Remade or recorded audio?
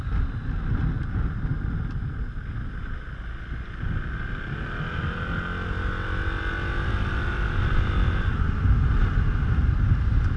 recorded